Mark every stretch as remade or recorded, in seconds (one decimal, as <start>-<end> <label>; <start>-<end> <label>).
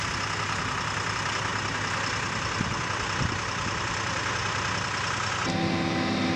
0.0-6.4 recorded